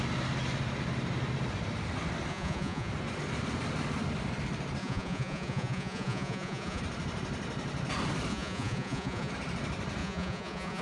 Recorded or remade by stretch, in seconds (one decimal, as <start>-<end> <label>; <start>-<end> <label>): 0.0-2.3 recorded; 2.3-2.9 remade; 2.9-4.8 recorded; 4.8-6.8 remade; 6.8-8.3 recorded; 8.3-9.3 remade; 9.3-10.0 recorded; 10.0-10.8 remade